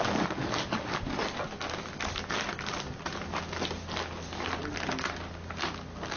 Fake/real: real